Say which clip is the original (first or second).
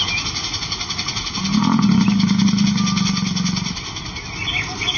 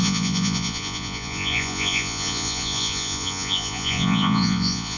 first